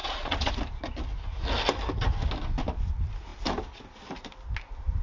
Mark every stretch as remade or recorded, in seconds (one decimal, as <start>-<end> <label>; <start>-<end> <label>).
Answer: 0.0-0.5 remade; 0.5-5.0 recorded

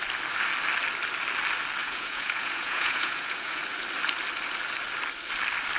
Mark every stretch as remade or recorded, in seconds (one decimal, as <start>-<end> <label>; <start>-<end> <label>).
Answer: 0.0-1.8 recorded; 1.8-3.6 remade; 3.6-5.8 recorded